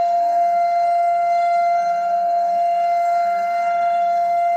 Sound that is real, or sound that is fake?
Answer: fake